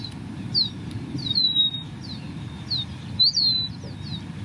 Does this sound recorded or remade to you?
recorded